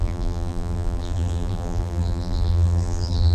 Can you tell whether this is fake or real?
fake